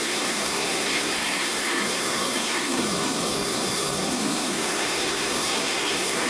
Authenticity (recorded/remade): remade